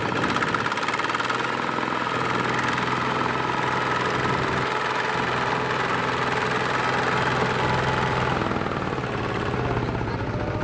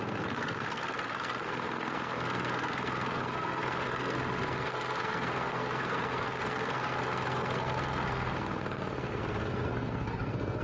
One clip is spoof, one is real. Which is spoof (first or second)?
second